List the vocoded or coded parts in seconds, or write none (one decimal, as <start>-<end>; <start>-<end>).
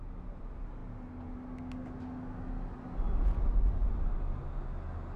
none